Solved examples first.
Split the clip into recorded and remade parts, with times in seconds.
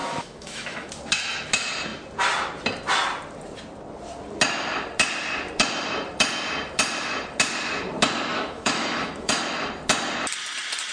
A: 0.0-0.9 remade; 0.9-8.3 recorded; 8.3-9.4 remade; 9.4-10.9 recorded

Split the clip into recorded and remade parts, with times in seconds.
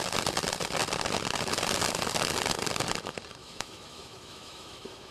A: 0.0-3.4 recorded; 3.4-5.1 remade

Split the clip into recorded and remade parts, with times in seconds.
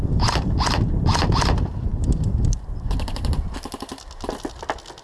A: 0.0-5.0 recorded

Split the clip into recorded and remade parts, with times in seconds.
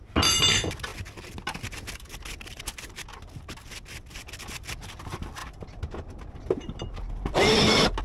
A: 0.0-8.0 recorded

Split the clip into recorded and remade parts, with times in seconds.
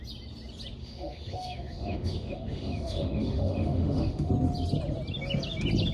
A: 0.0-0.8 recorded; 0.8-4.3 remade; 4.3-5.9 recorded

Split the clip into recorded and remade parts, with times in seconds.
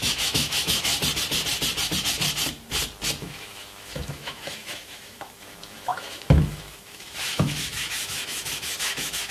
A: 0.0-0.9 remade; 0.9-3.2 recorded; 3.2-9.3 remade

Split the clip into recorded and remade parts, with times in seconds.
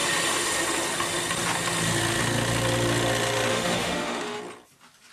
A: 0.0-3.5 recorded; 3.5-4.4 remade; 4.4-5.1 recorded